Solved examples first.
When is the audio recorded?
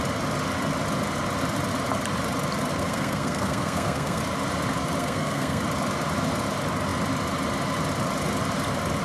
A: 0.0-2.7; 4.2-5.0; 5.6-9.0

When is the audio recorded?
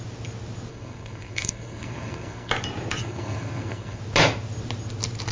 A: 0.0-0.7; 2.5-3.0; 4.0-5.3